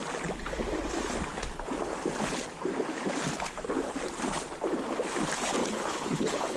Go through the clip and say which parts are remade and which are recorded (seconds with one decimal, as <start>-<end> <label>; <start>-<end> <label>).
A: 0.0-5.6 recorded; 5.6-6.6 remade